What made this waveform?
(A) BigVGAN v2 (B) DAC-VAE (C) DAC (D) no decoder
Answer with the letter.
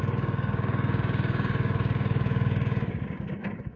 C